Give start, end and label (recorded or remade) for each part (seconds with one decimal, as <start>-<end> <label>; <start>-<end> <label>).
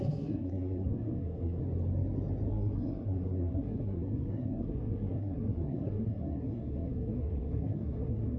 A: 0.0-1.6 remade; 1.6-2.5 recorded; 2.5-8.4 remade